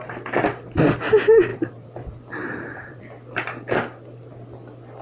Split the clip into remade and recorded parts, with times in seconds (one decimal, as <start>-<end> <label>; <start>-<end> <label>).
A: 0.0-1.5 recorded; 1.5-3.0 remade; 3.0-5.0 recorded